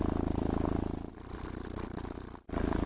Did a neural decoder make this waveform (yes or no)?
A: no